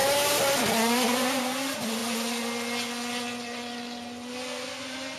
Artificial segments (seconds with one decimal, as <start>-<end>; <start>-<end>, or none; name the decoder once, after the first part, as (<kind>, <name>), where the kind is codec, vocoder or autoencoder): 0.0-0.7 (vocoder, BigVGAN v2)